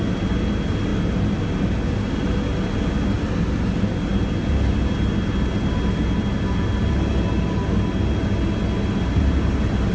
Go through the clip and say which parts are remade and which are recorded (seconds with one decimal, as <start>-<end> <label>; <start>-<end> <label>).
0.0-9.9 recorded